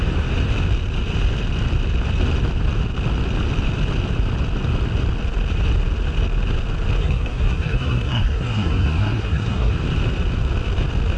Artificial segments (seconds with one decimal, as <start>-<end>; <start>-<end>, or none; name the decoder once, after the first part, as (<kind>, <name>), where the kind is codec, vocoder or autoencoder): 7.0-9.7 (codec, SNAC)